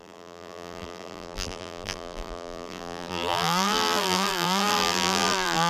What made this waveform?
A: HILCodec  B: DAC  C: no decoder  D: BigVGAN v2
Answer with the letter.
D